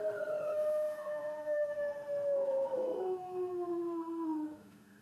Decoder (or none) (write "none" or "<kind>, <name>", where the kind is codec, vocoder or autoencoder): autoencoder, DAC-VAE